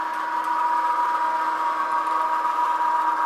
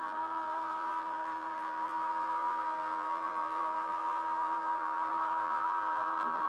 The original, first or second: first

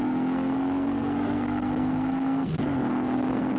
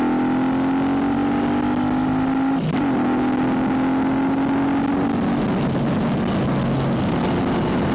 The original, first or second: second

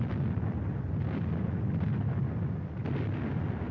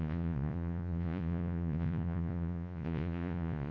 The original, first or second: first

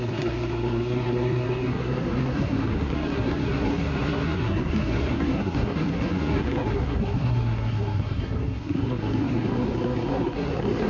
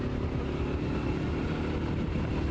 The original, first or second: second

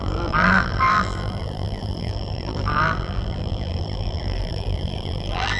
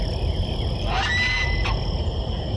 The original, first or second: second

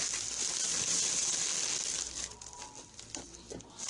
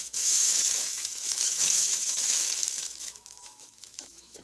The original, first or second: first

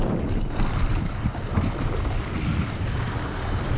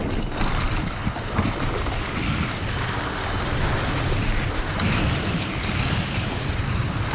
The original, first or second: second